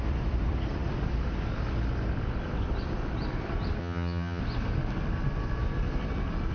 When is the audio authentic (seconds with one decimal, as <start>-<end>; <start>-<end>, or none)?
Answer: 0.0-3.8; 4.4-6.5